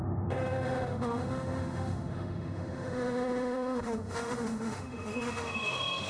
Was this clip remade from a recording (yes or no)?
yes